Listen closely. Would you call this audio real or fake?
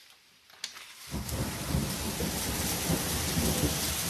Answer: real